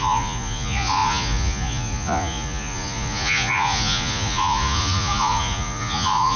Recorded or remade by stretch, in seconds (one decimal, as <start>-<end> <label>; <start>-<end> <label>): 0.0-6.4 remade